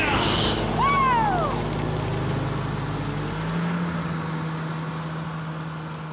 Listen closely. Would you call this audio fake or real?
real